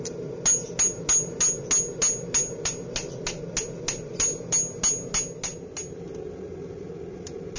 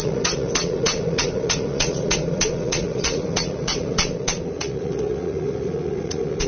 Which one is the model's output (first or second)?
second